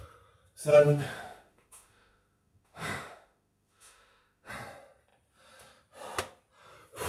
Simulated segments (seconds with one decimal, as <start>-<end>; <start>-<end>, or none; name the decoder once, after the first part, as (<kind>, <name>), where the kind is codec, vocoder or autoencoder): 0.7-4.5 (autoencoder, DAC-VAE)